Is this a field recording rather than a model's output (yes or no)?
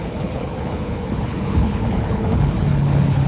no